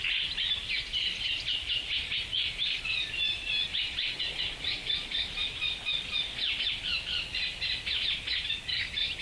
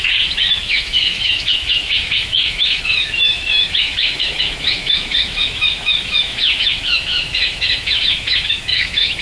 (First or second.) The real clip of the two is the first